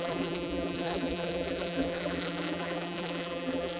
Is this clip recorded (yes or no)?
no